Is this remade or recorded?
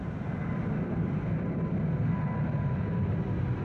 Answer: recorded